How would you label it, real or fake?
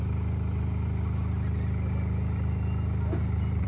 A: real